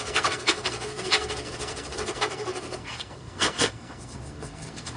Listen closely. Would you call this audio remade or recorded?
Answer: remade